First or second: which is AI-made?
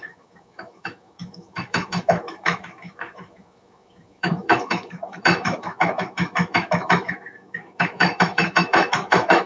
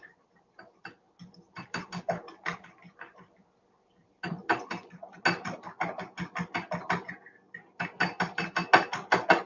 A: first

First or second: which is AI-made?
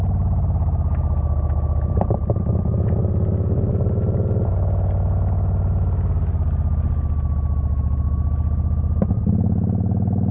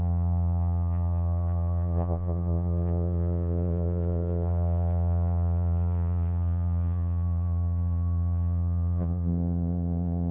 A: second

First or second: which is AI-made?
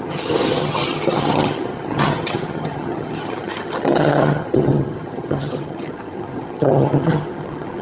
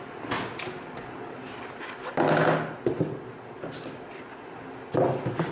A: first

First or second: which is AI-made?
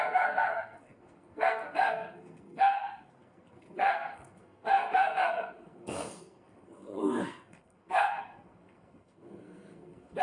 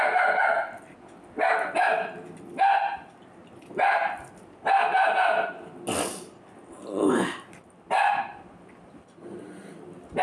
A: first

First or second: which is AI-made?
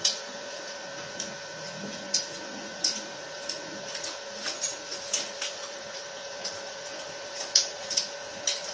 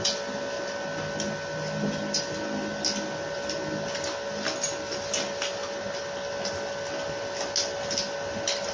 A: first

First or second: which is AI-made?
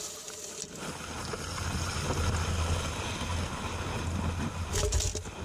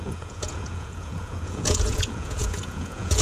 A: second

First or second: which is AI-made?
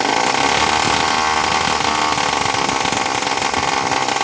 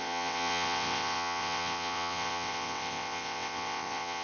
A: second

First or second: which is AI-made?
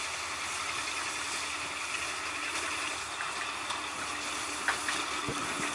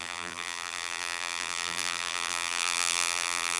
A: second